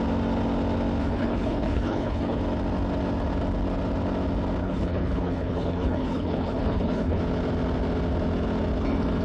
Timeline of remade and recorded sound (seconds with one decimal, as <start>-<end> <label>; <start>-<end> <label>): 0.0-1.0 recorded; 1.0-2.4 remade; 2.4-4.6 recorded; 4.6-7.2 remade; 7.2-9.2 recorded